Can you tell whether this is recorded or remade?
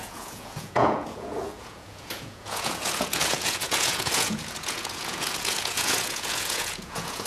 remade